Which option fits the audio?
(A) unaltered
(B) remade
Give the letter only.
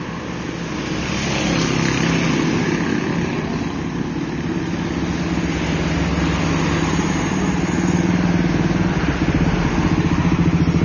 A